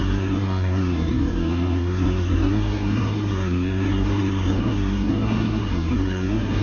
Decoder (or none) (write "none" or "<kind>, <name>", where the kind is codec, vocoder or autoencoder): codec, SNAC